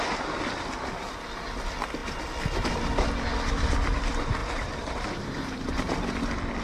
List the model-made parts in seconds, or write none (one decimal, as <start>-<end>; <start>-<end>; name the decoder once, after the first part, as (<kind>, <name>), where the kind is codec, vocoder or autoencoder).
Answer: 4.4-6.0 (vocoder, BigVGAN v2)